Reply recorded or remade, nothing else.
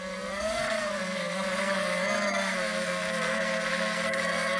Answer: remade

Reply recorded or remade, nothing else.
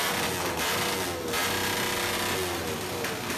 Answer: recorded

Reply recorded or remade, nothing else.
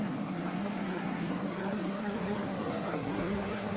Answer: remade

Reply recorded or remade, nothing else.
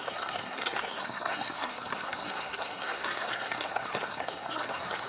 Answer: remade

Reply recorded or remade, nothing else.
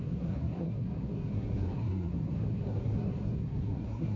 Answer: remade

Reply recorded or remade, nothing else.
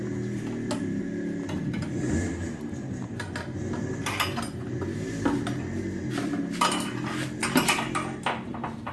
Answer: recorded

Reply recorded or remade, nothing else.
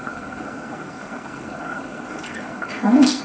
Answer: remade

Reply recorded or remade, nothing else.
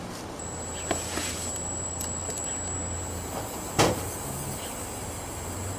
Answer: recorded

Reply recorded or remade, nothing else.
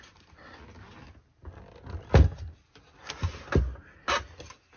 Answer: recorded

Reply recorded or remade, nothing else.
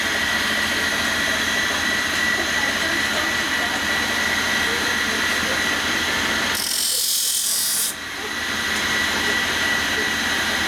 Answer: recorded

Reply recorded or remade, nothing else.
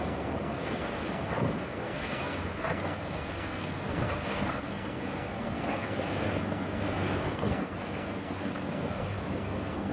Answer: remade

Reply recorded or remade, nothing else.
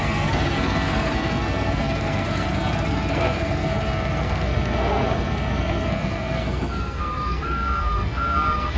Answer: remade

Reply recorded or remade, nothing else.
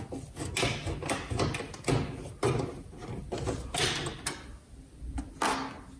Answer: recorded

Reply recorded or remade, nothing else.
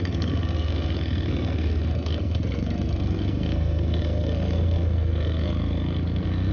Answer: remade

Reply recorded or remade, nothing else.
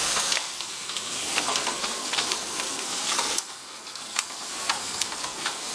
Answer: remade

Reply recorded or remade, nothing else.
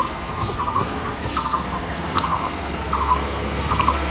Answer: remade